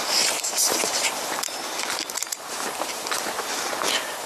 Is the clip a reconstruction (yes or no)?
yes